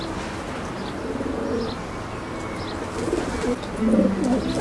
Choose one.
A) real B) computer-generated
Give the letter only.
A